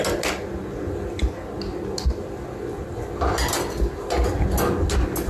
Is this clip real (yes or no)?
yes